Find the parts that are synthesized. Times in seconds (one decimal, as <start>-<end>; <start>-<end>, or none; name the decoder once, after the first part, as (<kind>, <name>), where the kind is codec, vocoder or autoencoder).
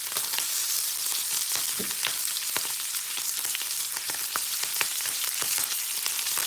2.2-4.1 (vocoder, BigVGAN v2); 4.7-5.2